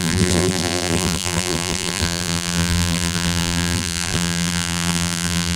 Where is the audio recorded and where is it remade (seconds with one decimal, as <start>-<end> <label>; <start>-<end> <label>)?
0.0-5.6 remade